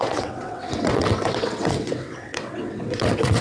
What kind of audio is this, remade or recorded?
remade